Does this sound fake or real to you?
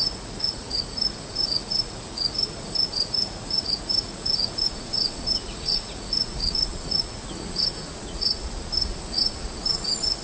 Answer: fake